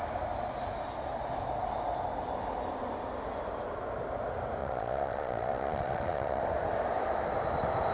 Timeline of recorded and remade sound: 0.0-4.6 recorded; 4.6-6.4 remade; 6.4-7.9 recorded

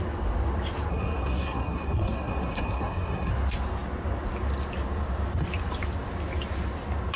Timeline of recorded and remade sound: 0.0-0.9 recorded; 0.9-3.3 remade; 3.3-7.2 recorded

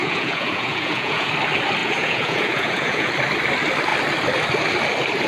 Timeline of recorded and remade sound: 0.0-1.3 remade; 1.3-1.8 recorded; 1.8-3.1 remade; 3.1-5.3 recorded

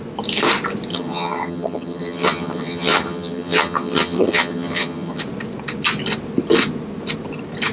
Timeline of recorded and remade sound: 0.0-0.9 recorded; 0.9-5.2 remade; 5.2-7.7 recorded

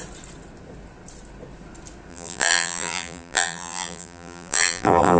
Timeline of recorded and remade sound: 0.0-2.1 recorded; 2.1-5.2 remade

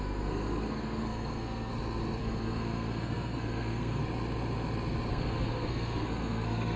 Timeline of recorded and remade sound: 0.0-1.7 remade; 1.7-2.2 recorded; 2.2-4.0 remade; 4.0-5.1 recorded; 5.1-6.8 remade

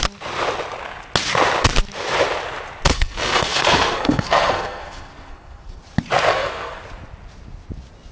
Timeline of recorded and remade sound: 0.0-2.9 recorded; 2.9-5.8 remade; 5.8-6.3 recorded; 6.3-6.8 remade; 6.8-8.1 recorded

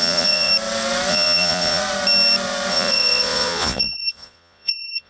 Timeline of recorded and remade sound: 0.0-0.5 remade; 0.5-1.1 recorded; 1.1-1.8 remade; 1.8-2.7 recorded; 2.7-5.1 remade